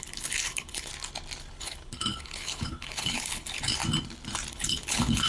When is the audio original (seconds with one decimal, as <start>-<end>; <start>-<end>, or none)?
0.9-1.5; 3.8-4.5